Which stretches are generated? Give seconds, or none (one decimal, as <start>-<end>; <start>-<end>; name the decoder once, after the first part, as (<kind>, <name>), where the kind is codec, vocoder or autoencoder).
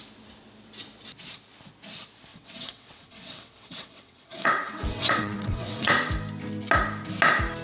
2.3-5.9 (vocoder, WaveNeXt)